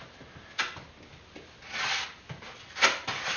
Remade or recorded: recorded